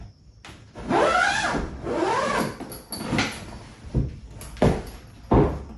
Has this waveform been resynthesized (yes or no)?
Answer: no